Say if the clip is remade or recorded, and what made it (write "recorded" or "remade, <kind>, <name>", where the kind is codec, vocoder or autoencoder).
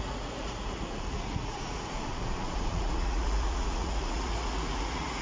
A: remade, vocoder, Vocos